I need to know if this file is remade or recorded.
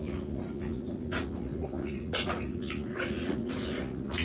remade